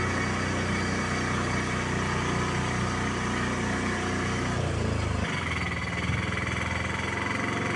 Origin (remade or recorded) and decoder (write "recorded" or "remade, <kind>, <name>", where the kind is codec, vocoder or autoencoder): recorded